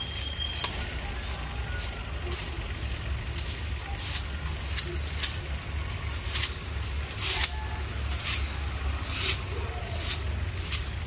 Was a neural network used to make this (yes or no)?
no